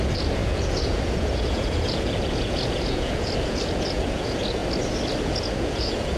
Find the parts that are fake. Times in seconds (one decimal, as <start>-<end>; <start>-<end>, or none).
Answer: 0.0-4.6; 5.2-6.2